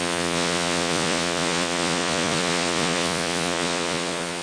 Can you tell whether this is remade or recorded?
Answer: remade